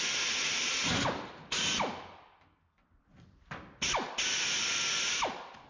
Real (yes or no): yes